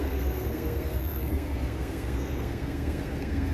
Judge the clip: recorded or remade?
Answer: remade